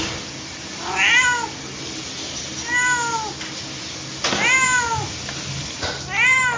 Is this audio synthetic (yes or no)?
no